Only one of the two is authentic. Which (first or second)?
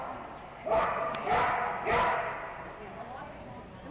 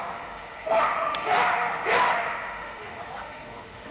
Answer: first